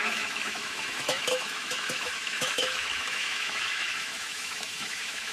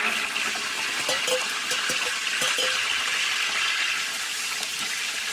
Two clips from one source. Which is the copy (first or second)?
first